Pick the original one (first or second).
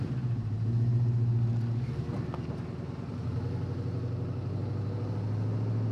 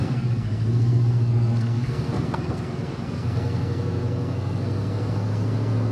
first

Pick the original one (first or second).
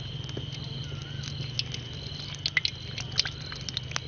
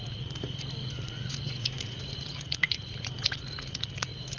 first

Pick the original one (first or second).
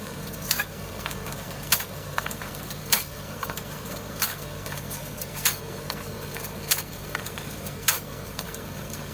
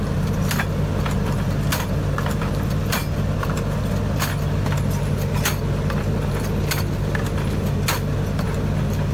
second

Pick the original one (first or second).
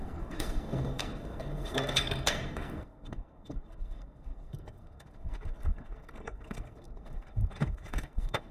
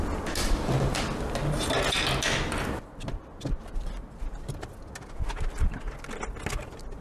second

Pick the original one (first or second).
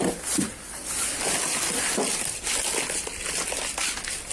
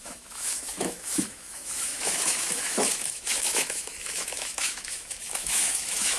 first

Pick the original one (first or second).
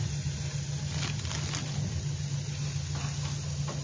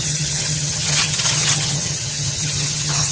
first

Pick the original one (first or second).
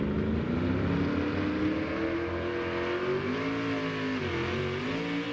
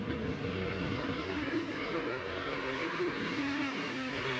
first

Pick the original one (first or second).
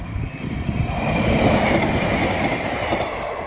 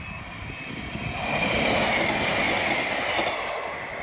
second